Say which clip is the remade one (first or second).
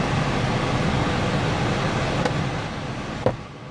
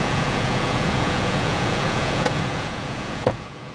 second